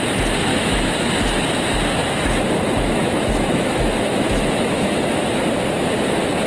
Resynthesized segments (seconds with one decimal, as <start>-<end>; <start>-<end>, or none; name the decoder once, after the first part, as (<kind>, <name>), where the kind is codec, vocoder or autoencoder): 0.5-1.1 (autoencoder, DAC-VAE); 2.0-5.2